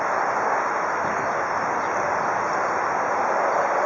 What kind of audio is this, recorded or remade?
recorded